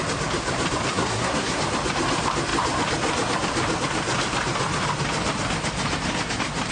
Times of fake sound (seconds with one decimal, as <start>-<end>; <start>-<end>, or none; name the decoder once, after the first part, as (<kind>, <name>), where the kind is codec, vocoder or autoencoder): 0.9-1.6 (codec, SNAC)